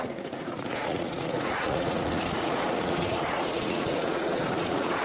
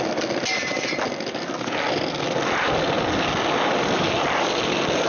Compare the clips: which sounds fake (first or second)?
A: first